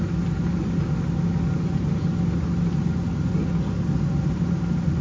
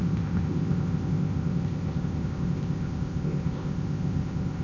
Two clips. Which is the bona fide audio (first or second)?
first